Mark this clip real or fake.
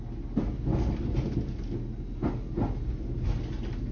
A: real